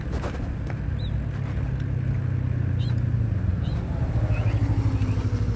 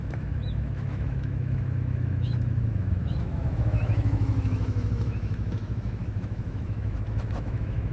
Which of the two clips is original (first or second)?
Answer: first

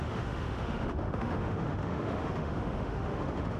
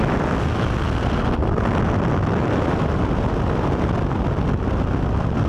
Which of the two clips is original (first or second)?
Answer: second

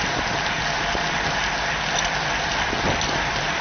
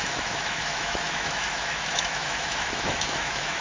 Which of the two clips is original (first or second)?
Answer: first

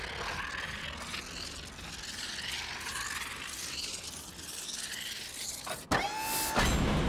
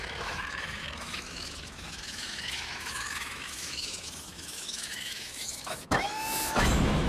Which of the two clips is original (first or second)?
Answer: first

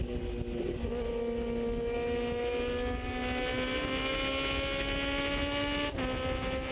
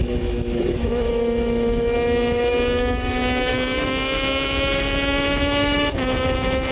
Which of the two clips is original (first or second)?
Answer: first